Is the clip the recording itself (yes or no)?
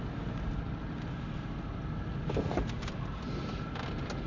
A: yes